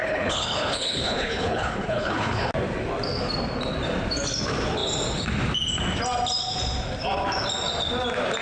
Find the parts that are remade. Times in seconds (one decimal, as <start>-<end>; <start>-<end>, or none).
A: 0.0-2.5